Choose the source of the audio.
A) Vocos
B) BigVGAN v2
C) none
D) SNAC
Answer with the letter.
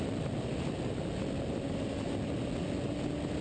C